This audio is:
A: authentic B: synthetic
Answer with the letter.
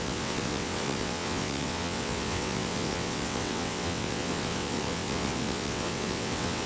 B